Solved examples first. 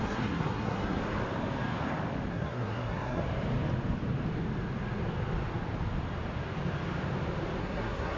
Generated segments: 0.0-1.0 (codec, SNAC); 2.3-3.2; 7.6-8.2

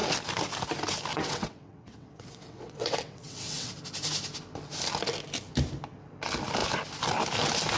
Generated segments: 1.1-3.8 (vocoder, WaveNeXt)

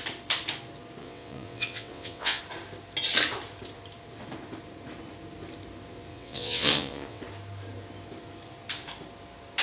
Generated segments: 1.0-2.4 (vocoder, WaveNeXt); 6.1-7.2

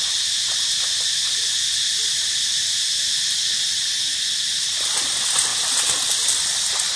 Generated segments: none

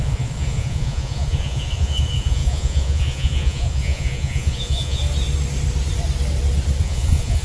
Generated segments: 0.0-5.0 (vocoder, Vocos); 6.8-7.4

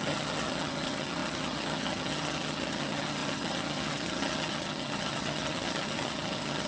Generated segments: 0.0-6.7 (vocoder, HiFi-GAN)